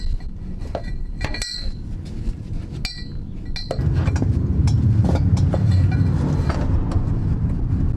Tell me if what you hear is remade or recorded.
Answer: recorded